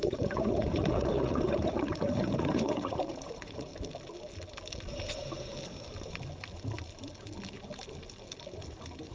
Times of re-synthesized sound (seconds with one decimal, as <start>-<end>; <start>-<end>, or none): 0.0-3.7